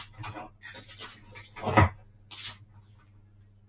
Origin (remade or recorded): recorded